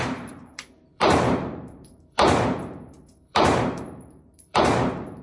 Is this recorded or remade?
remade